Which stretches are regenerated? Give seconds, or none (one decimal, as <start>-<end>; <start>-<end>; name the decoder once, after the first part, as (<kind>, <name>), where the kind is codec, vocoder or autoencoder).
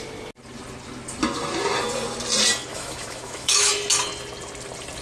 2.7-3.7 (autoencoder, DAC-VAE)